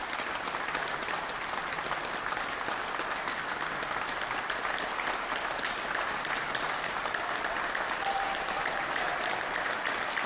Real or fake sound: real